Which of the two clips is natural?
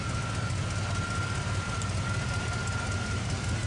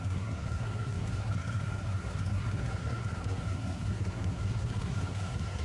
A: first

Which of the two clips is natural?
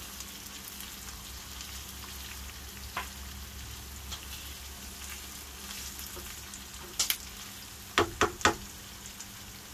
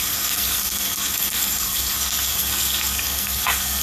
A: first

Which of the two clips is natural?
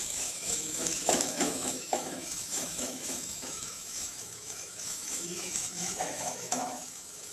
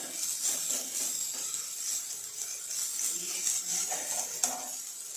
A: second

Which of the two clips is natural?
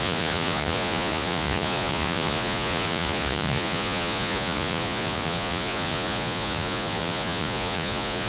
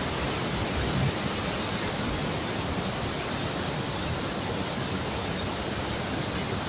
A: second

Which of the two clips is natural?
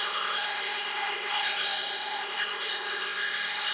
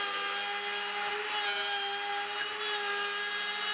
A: second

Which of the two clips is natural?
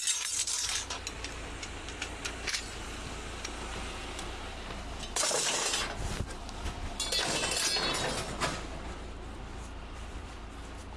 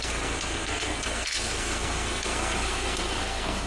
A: first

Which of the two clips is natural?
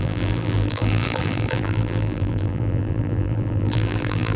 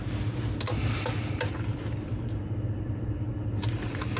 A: second